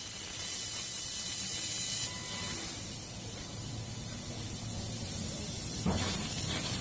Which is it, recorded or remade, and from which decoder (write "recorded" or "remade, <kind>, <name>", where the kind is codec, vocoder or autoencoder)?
recorded